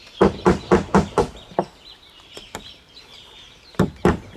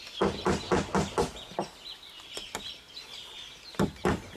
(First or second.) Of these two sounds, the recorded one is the second